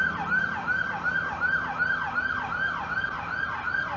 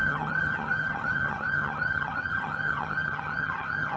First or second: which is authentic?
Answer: first